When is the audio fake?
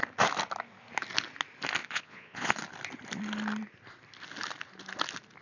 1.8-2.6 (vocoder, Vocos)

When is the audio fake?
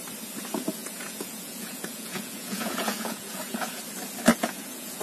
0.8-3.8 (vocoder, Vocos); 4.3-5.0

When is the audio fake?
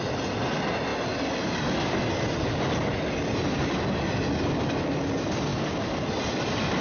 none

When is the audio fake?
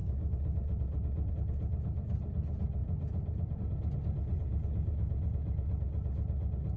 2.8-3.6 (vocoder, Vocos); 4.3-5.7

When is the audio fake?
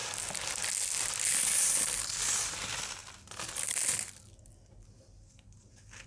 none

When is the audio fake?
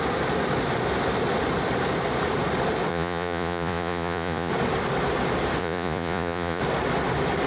2.9-4.5 (vocoder, Vocos); 5.6-6.6